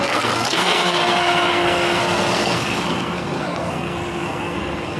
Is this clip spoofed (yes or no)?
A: yes